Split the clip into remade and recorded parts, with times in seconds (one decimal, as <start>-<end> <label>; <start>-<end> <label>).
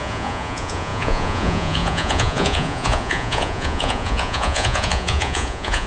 0.0-5.9 remade